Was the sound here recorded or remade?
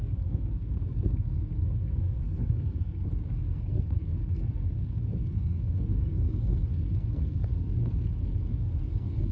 remade